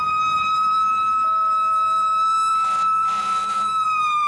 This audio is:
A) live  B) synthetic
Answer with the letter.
B